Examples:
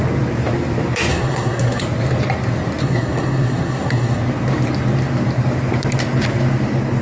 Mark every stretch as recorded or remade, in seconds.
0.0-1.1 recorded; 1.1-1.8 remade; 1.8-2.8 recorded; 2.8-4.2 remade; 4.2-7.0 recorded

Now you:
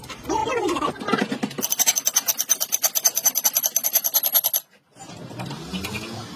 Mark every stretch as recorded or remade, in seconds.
0.0-6.4 recorded

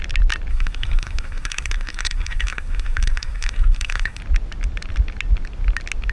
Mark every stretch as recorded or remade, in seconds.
0.0-0.5 recorded; 0.5-4.2 remade; 4.2-6.1 recorded

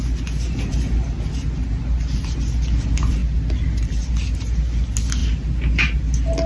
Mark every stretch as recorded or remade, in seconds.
0.0-6.5 recorded